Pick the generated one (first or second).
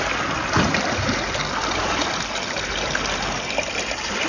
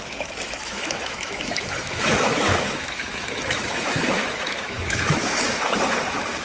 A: second